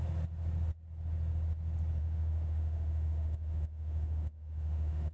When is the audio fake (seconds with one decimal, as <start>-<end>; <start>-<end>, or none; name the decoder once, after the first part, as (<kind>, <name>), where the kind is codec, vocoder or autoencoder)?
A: 2.0-5.1 (autoencoder, DAC-VAE)